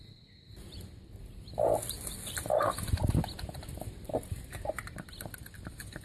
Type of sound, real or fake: real